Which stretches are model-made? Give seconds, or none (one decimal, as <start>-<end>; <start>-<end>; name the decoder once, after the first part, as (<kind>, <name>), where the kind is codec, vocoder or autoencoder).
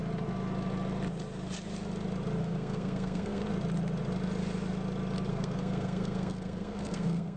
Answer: 2.4-3.4 (codec, SNAC); 5.3-7.4